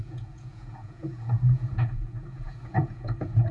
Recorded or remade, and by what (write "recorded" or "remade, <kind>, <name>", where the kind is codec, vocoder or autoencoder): remade, vocoder, Vocos